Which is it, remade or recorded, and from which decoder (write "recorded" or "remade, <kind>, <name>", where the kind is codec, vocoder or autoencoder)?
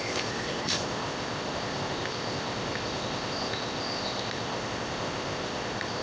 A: remade, codec, ZipCodec